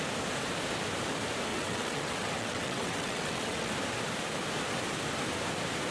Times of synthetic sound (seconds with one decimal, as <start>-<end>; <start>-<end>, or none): 1.5-3.7